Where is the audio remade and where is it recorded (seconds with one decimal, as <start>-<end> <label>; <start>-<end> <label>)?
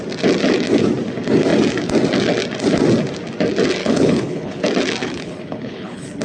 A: 0.0-3.8 recorded; 3.8-4.6 remade; 4.6-5.0 recorded; 5.0-6.2 remade